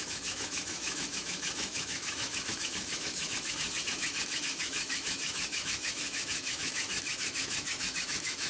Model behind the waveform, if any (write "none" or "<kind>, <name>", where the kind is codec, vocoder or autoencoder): autoencoder, DAC-VAE